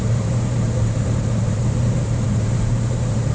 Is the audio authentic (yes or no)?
no